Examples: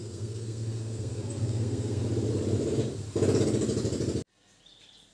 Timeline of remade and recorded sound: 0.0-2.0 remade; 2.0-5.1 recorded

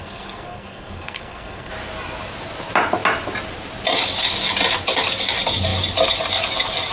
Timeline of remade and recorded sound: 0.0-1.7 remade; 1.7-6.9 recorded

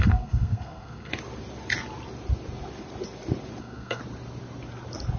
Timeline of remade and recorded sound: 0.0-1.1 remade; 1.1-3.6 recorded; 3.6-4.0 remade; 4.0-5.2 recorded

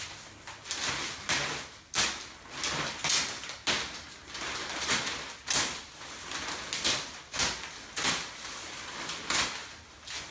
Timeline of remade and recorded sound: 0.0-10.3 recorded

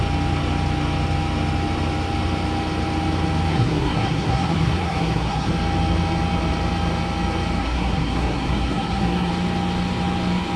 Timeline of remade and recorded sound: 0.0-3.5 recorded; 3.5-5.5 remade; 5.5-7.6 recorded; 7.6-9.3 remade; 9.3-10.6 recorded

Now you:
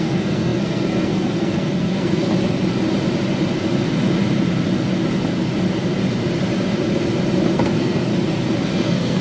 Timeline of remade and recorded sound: 0.0-2.3 remade; 2.3-7.5 recorded; 7.5-8.1 remade; 8.1-8.6 recorded; 8.6-9.2 remade

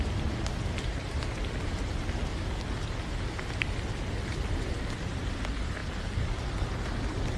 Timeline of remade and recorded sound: 0.0-7.4 recorded

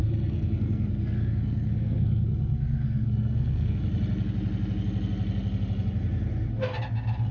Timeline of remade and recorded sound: 0.0-3.8 remade; 3.8-7.3 recorded